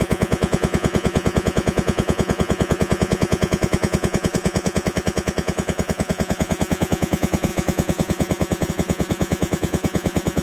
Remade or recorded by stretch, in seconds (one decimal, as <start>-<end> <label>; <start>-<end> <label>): 0.0-10.4 remade